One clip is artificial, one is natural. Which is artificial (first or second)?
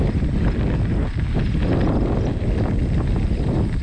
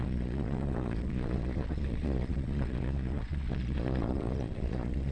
second